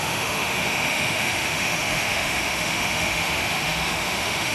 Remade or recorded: remade